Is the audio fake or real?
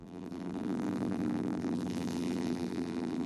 fake